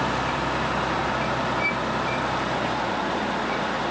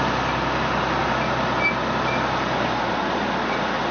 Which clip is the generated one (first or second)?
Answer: first